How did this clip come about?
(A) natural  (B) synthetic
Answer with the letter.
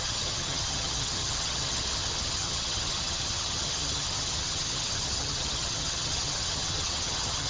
B